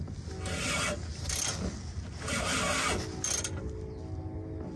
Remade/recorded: recorded